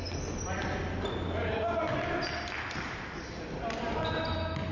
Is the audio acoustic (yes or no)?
yes